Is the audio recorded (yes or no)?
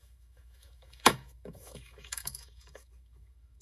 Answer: no